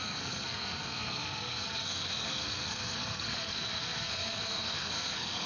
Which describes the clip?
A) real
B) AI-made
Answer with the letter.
B